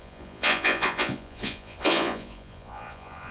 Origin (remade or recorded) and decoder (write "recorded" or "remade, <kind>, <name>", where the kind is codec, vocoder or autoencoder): remade, vocoder, Vocos